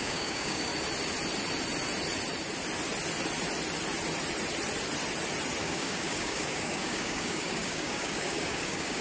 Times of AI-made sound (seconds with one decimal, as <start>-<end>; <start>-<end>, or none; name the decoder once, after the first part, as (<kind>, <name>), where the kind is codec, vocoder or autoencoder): 0.0-0.7 (codec, DAC); 5.6-9.0